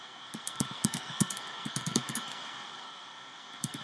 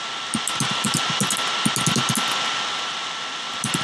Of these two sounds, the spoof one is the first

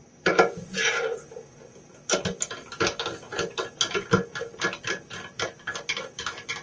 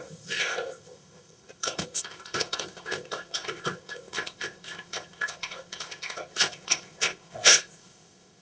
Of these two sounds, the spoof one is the second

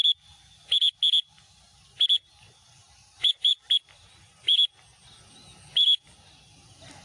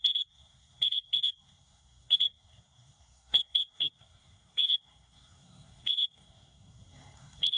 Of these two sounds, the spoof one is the second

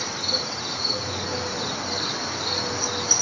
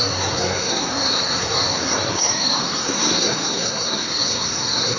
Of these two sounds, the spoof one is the second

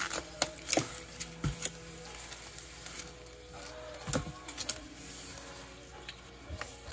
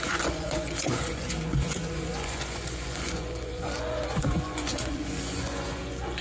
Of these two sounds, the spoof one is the second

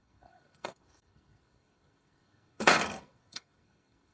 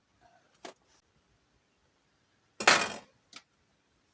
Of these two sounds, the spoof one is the first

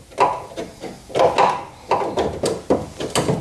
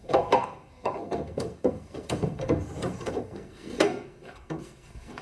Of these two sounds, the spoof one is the second